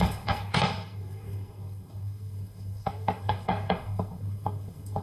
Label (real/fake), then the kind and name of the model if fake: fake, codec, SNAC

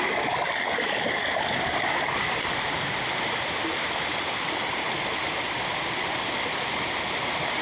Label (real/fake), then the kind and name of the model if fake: fake, vocoder, BigVGAN v2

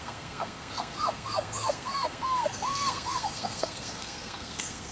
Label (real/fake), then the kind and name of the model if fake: fake, codec, SNAC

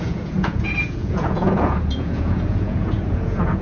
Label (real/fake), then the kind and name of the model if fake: fake, vocoder, Vocos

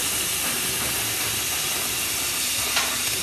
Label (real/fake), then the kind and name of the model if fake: real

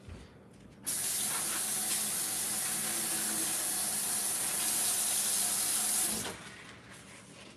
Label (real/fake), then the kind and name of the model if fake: real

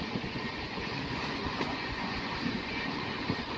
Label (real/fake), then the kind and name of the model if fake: fake, vocoder, Vocos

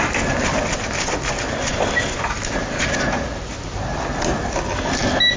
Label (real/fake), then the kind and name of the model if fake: real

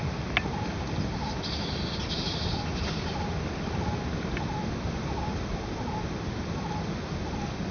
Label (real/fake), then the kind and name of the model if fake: real